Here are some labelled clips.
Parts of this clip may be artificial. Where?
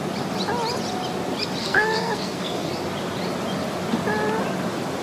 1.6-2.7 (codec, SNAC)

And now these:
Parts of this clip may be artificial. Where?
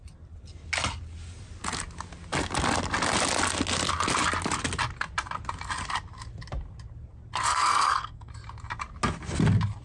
7.5-8.3 (codec, SNAC)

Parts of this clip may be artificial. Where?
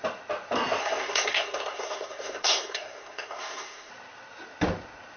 0.8-3.9 (codec, SNAC)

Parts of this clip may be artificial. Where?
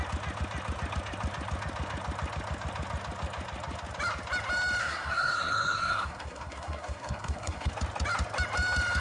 4.8-7.7 (codec, SNAC)